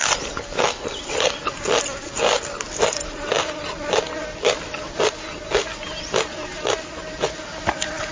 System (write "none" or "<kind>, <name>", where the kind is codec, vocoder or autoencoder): none